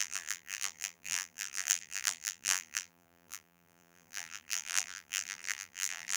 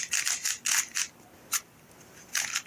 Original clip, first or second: second